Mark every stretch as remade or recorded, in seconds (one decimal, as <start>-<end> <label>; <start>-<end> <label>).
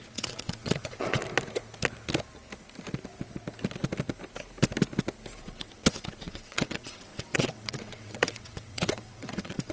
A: 0.0-1.2 remade; 1.2-5.4 recorded; 5.4-9.7 remade